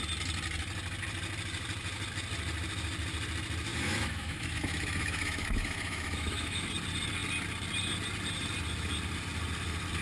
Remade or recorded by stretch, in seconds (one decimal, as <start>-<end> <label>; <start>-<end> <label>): 0.0-3.7 recorded; 3.7-6.7 remade; 6.7-10.0 recorded